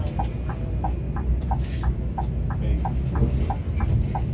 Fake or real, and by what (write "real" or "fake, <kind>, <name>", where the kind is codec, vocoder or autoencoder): real